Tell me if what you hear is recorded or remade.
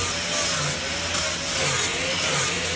recorded